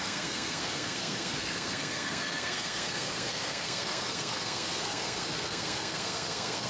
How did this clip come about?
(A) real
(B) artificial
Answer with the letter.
B